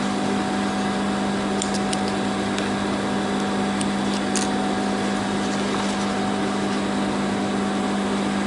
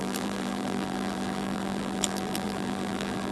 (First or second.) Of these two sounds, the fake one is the second